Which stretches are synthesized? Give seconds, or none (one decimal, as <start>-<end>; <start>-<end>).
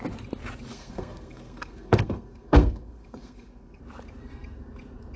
0.7-3.8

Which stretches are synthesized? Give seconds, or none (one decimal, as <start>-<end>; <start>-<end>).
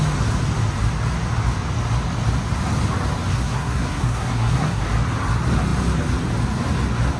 3.3-4.8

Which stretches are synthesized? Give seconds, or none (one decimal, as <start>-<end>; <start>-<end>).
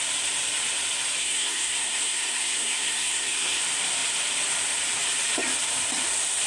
1.2-3.6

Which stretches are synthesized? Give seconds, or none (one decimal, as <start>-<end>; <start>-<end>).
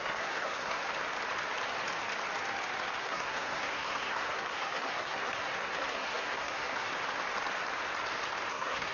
0.0-0.9; 3.0-6.9; 8.5-8.9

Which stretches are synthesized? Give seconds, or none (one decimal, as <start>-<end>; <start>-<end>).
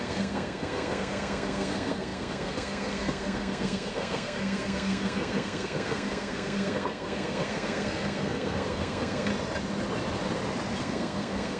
0.0-9.3; 10.8-11.6